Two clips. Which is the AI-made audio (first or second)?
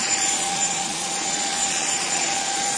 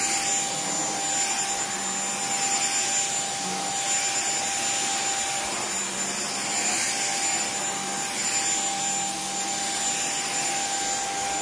first